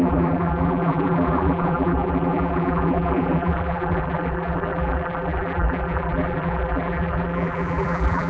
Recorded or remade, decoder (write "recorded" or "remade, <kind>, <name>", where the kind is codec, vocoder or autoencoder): remade, vocoder, BigVGAN v2